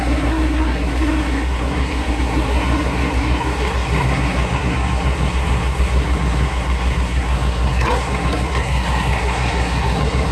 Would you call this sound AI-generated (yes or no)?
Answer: yes